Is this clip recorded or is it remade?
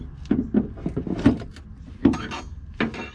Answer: recorded